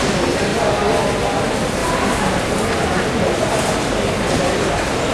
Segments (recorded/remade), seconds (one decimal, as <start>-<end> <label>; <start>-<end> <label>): 0.0-5.1 recorded